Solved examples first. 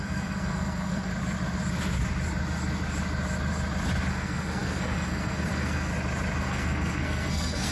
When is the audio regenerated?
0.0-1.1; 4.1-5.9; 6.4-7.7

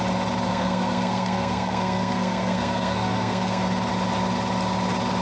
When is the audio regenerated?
0.5-3.6